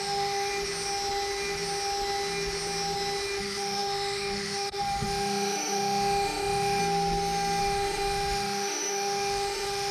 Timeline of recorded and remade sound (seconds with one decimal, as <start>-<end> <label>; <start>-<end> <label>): 0.0-0.5 remade; 0.5-3.4 recorded; 3.4-6.8 remade; 6.8-7.6 recorded; 7.6-9.9 remade